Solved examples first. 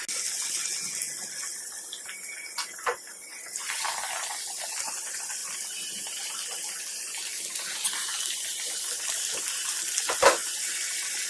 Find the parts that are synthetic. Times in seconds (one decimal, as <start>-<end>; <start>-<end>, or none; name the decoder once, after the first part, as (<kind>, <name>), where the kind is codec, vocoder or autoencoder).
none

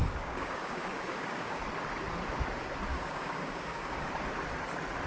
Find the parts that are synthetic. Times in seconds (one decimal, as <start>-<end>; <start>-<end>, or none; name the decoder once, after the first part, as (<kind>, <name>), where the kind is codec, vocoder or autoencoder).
0.0-1.6 (codec, DAC); 2.9-4.1

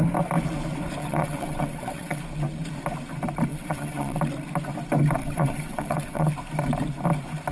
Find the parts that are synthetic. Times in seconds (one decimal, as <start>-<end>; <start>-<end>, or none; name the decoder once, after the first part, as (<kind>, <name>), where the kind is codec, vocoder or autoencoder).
1.0-2.2 (vocoder, WaveNeXt); 3.5-4.2; 5.2-6.3